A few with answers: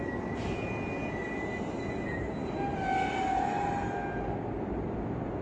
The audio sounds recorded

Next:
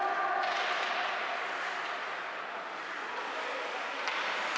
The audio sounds recorded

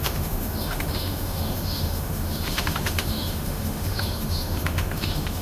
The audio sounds remade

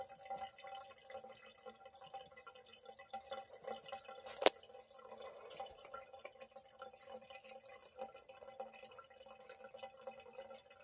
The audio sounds recorded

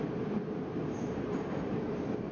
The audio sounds recorded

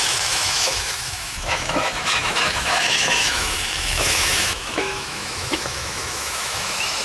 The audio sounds remade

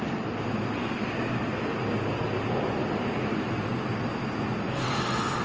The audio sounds recorded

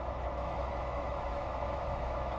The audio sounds remade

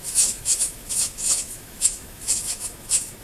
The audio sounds remade